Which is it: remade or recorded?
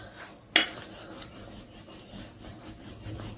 recorded